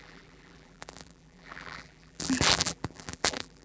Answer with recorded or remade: remade